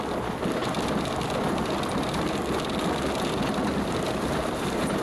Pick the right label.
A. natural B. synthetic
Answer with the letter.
A